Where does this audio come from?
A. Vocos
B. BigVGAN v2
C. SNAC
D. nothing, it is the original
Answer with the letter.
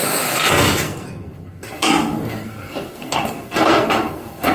C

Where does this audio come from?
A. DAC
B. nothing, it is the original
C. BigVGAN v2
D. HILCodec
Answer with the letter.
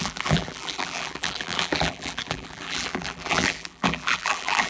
C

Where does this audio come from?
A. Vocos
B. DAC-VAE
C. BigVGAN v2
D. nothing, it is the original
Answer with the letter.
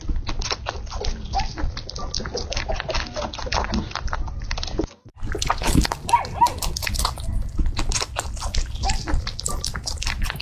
D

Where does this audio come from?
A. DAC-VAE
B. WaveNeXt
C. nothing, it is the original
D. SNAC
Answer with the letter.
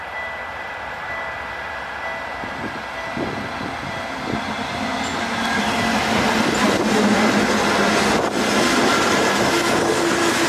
C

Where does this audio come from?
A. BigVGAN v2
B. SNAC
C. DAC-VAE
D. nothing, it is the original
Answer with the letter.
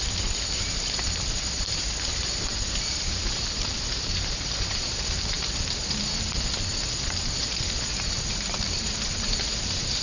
A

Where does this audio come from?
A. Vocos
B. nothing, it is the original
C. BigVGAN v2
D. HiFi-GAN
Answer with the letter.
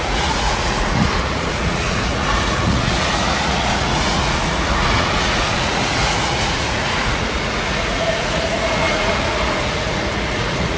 A